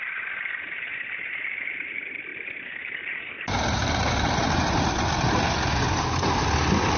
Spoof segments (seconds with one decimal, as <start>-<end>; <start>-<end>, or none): 0.0-0.9; 1.7-2.3; 6.0-7.0